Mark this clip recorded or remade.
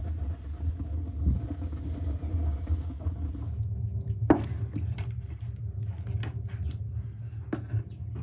recorded